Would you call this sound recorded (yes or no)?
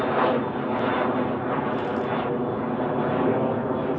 yes